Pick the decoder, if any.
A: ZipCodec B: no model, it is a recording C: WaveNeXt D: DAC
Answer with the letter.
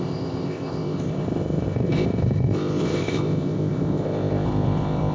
A